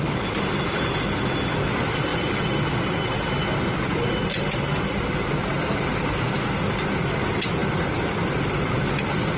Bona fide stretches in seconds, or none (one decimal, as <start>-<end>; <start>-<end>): 0.0-5.9; 6.9-9.4